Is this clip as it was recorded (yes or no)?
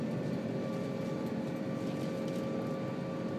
yes